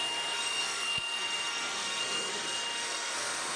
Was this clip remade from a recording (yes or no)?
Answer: yes